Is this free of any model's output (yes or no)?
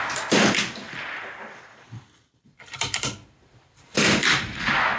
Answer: yes